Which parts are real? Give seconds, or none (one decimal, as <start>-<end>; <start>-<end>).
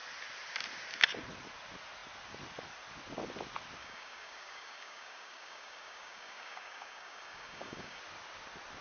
0.0-3.8; 8.0-8.8